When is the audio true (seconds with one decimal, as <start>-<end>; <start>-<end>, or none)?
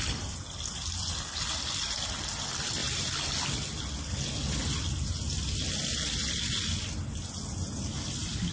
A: 0.0-8.5